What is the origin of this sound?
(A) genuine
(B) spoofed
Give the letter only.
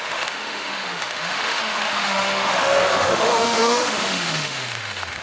B